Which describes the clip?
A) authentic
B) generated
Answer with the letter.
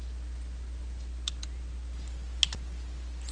A